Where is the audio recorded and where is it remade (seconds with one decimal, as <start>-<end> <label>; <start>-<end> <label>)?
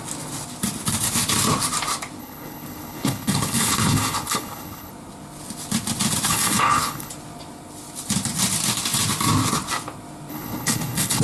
0.0-2.2 recorded; 2.2-4.9 remade; 4.9-6.3 recorded; 6.3-7.1 remade; 7.1-10.3 recorded; 10.3-11.2 remade